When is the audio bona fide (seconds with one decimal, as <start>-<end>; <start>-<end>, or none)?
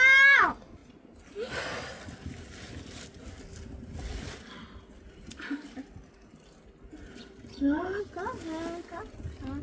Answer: 0.0-7.5; 8.0-9.6